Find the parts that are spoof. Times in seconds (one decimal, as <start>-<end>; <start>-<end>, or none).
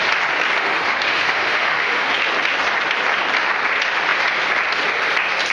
0.6-2.1